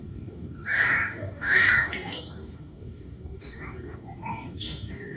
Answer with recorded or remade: remade